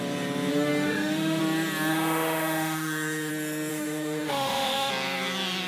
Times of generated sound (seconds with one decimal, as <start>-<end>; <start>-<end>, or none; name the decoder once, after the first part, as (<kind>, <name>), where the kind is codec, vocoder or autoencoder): 0.5-1.4 (autoencoder, DAC-VAE); 1.9-3.3; 3.7-4.9